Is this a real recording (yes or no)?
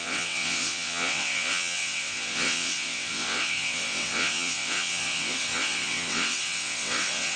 no